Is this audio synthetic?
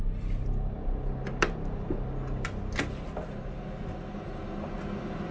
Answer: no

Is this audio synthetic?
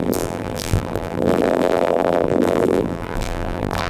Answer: yes